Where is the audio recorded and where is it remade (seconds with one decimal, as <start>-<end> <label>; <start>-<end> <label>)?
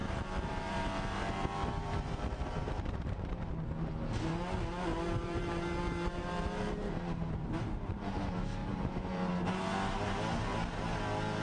0.0-3.5 remade; 3.5-4.9 recorded; 4.9-8.2 remade; 8.2-8.6 recorded; 8.6-9.3 remade; 9.3-11.4 recorded